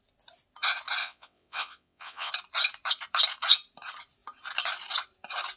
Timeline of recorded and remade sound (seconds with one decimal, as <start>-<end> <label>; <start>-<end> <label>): 0.0-1.0 recorded; 1.0-2.3 remade; 2.3-5.6 recorded